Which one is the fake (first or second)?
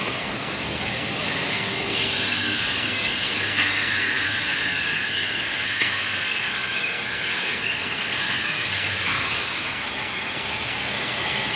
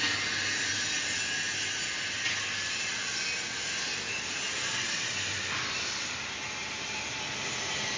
first